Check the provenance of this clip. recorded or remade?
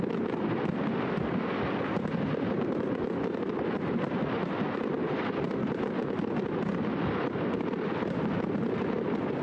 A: recorded